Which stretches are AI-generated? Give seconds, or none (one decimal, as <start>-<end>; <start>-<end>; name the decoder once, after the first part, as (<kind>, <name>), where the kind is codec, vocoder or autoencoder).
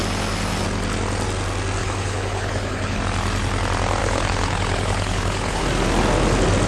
1.8-3.0 (codec, HILCodec); 4.0-5.6